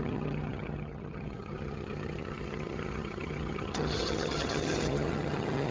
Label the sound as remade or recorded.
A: remade